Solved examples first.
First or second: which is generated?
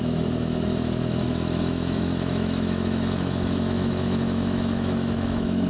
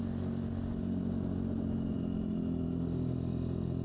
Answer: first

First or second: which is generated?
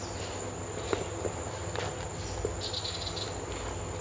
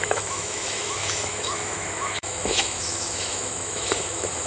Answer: second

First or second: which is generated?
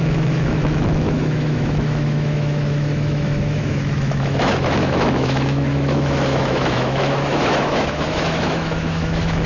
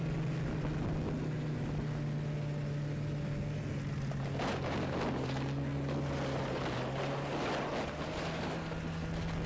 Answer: first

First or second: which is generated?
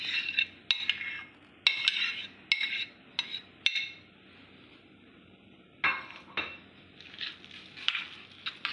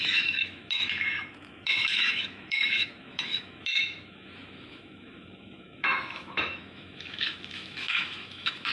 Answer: second